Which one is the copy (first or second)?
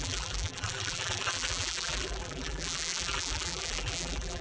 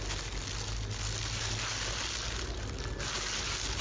first